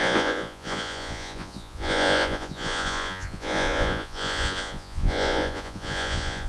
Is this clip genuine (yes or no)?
no